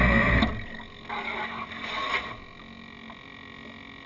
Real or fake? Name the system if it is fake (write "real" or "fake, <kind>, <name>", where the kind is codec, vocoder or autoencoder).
real